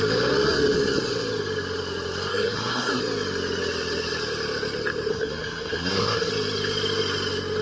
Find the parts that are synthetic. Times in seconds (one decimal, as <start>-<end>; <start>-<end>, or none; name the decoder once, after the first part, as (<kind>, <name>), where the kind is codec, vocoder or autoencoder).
2.3-3.0 (codec, SNAC); 5.1-6.3